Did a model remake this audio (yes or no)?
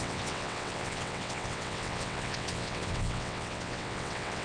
yes